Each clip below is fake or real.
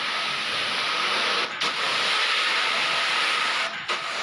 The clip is real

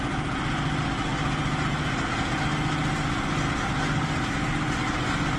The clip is real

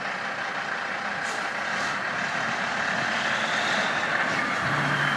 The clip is real